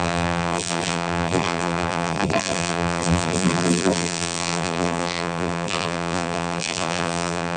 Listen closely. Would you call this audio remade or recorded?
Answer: remade